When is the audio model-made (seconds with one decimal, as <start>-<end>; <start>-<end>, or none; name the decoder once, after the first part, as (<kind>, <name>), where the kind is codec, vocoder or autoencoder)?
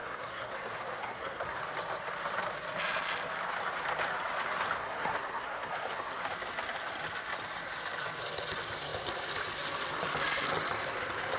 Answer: 0.0-0.5 (codec, SNAC); 1.0-1.6; 4.8-6.2